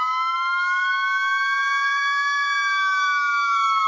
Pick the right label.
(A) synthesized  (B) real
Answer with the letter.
A